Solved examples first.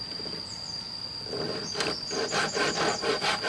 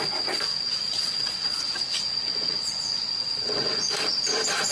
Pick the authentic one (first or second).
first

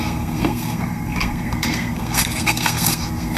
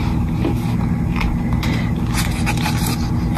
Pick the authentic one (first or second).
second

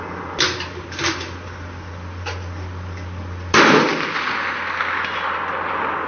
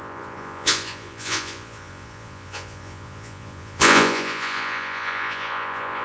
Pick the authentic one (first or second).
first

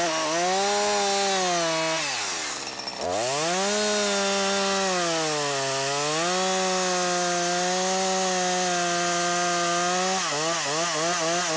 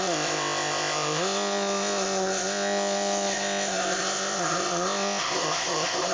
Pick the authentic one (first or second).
first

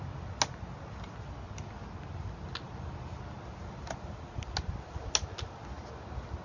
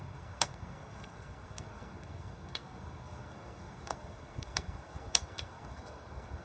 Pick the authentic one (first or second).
first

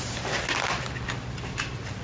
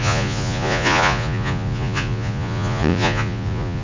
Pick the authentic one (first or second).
first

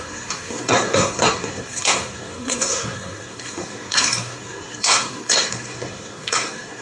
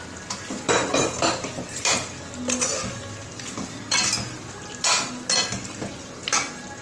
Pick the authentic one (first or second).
second